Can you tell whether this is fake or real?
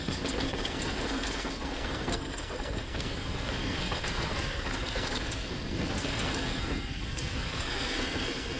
fake